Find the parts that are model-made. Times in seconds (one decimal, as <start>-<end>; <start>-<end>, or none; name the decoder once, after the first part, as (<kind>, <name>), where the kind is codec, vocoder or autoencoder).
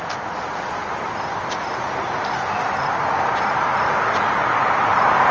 0.8-1.5 (vocoder, BigVGAN v2)